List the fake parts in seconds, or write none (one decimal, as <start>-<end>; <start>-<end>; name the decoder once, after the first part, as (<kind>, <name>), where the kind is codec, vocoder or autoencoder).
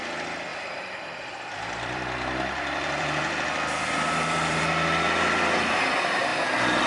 0.5-4.6 (vocoder, BigVGAN v2); 6.3-6.9